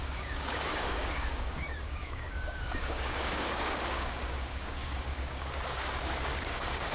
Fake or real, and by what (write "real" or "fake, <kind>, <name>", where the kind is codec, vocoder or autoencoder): fake, codec, DAC